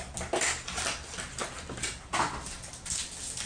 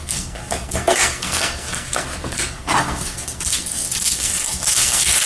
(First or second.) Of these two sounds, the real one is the first